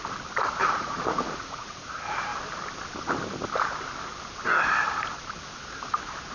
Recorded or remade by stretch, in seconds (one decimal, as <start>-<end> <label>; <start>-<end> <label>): 0.0-0.6 recorded; 0.6-1.8 remade; 1.8-6.3 recorded